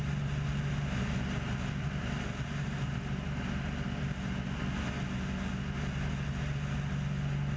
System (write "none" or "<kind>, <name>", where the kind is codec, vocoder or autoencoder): none